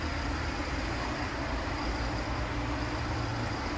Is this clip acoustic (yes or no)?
yes